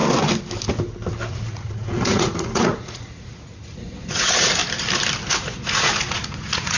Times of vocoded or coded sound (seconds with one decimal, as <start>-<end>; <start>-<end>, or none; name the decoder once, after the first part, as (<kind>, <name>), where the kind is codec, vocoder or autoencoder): 1.3-4.6 (vocoder, Vocos); 5.3-6.8